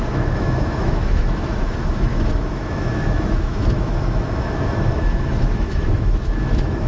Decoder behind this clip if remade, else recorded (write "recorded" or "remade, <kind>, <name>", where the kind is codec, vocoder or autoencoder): remade, autoencoder, DAC-VAE